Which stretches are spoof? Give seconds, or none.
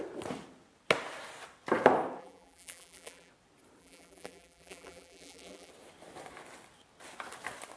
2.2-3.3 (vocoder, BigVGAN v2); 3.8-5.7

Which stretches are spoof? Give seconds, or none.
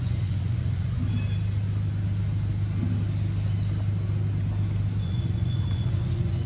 0.0-1.1 (vocoder, Vocos); 5.0-6.5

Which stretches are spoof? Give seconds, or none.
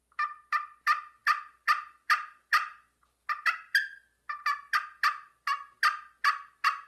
none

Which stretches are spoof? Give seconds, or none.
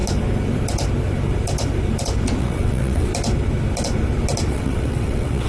2.4-3.1 (vocoder, WaveNeXt); 4.5-5.5